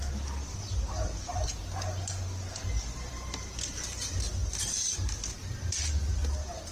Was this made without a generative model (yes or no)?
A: yes